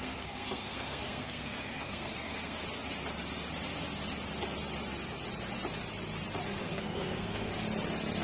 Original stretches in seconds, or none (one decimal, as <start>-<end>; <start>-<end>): 2.6-6.6; 7.5-8.2